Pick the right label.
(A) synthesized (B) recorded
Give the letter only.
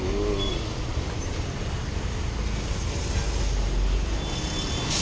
B